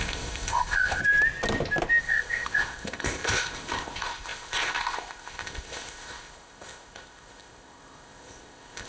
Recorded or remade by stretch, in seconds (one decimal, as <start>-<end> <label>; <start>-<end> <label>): 0.0-1.0 remade; 1.0-2.0 recorded; 2.0-8.9 remade